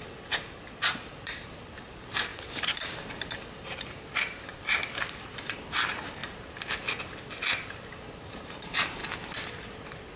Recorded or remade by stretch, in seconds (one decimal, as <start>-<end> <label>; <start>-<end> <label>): 0.0-6.2 remade; 6.2-7.9 recorded; 7.9-9.0 remade; 9.0-10.2 recorded